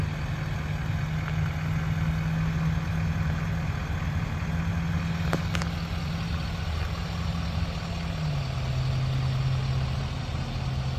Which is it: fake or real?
real